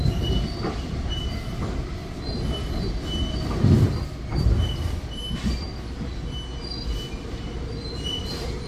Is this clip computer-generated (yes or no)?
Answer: no